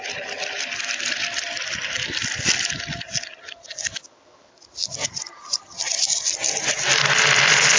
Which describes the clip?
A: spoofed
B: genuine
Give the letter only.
A